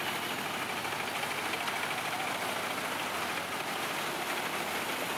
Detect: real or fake real